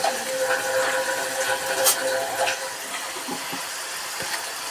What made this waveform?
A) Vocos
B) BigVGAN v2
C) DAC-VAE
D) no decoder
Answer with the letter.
D